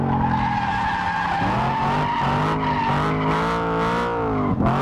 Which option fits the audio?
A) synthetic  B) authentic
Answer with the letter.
B